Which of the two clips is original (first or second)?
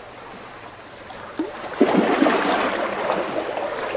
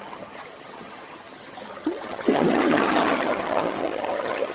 first